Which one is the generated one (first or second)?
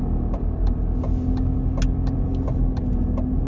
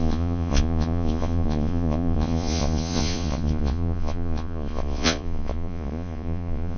second